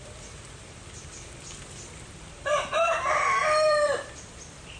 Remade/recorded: remade